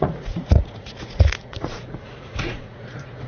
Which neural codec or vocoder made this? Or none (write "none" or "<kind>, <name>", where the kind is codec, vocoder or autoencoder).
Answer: vocoder, Vocos